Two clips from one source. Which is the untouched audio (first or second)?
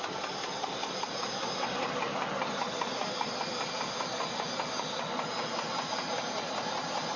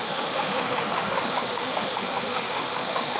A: first